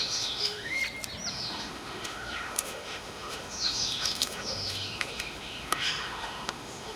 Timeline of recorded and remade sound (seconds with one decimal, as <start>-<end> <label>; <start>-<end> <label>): 0.0-0.8 remade; 0.8-1.3 recorded; 1.3-7.0 remade

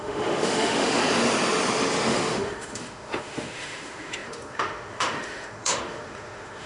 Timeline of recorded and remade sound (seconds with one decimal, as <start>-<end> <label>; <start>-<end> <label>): 0.0-1.0 remade; 1.0-2.1 recorded; 2.1-6.7 remade

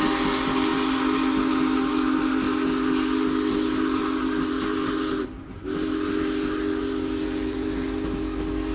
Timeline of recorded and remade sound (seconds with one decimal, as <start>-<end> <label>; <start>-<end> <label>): 0.0-8.7 recorded

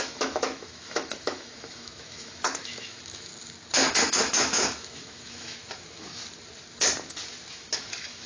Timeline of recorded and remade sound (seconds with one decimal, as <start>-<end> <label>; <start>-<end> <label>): 0.0-3.3 remade; 3.3-4.1 recorded; 4.1-6.2 remade; 6.2-7.5 recorded; 7.5-8.3 remade

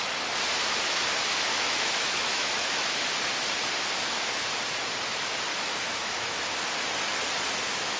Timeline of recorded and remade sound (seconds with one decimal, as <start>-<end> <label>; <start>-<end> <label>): 0.0-1.5 recorded; 1.5-2.9 remade; 2.9-5.5 recorded; 5.5-6.4 remade; 6.4-8.0 recorded

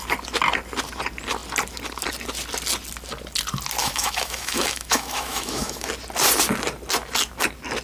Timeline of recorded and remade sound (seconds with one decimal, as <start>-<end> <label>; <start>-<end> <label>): 0.0-3.8 recorded; 3.8-5.9 remade; 5.9-7.8 recorded

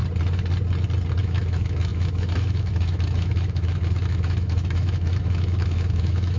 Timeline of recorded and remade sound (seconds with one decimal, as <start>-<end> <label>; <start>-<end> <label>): 0.0-1.2 recorded; 1.2-6.4 remade

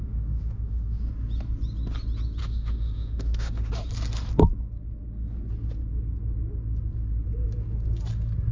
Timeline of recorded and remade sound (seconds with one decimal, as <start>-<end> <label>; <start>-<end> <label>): 0.0-1.0 remade; 1.0-2.4 recorded; 2.4-3.7 remade; 3.7-8.5 recorded